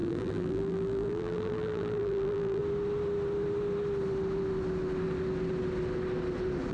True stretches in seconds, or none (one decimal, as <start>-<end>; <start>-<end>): 2.6-6.7